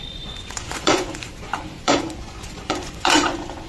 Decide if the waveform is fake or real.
fake